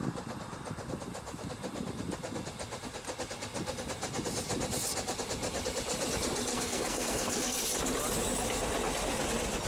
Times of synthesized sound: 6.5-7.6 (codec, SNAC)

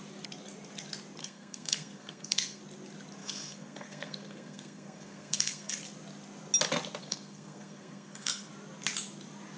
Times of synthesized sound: 1.2-2.6 (codec, SNAC); 3.2-5.7; 7.0-8.5

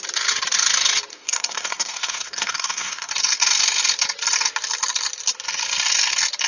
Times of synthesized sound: 1.1-3.1 (codec, SNAC)